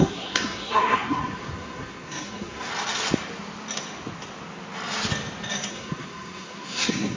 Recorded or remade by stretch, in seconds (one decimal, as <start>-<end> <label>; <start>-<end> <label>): 0.0-2.7 remade; 2.7-5.7 recorded; 5.7-7.2 remade